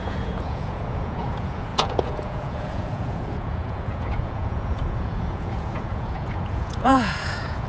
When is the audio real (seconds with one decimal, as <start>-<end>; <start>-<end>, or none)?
none